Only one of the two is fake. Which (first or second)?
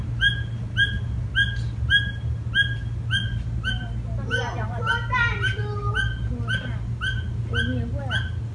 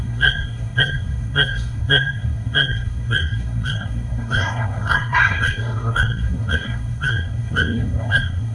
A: second